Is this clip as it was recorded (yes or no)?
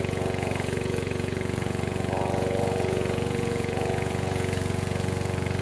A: no